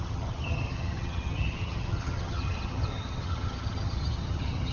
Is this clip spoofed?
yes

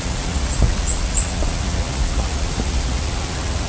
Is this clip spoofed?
yes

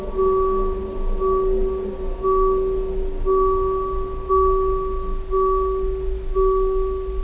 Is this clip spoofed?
no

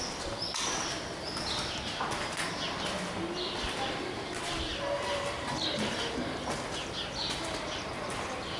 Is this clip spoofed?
no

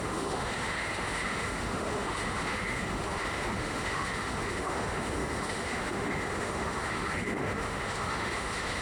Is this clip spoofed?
yes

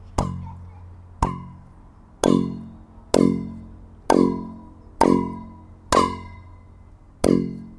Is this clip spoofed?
no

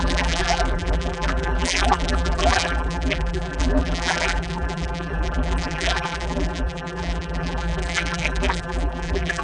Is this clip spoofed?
yes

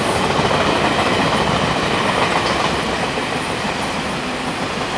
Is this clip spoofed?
no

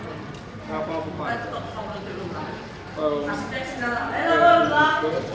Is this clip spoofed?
no